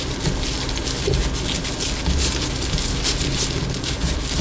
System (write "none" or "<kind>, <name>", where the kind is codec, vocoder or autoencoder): none